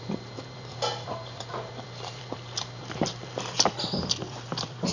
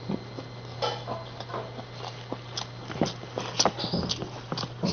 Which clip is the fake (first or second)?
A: first